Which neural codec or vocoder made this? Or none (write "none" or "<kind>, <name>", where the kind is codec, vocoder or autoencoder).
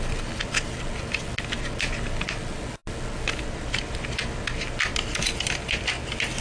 none